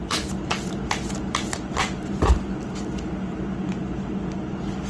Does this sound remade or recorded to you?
recorded